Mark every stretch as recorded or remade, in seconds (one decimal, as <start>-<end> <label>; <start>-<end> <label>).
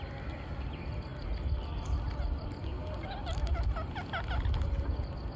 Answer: 0.0-5.4 recorded